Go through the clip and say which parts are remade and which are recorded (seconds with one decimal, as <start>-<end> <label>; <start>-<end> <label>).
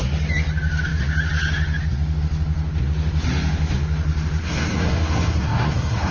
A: 0.0-4.4 recorded; 4.4-6.1 remade